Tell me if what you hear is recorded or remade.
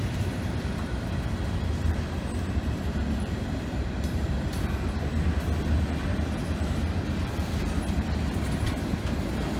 remade